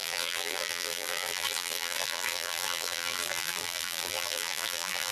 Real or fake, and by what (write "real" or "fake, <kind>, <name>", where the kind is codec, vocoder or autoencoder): fake, vocoder, BigVGAN v2